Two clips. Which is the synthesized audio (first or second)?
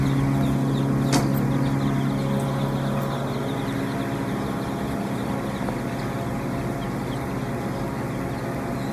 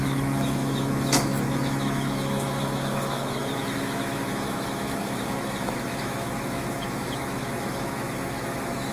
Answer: second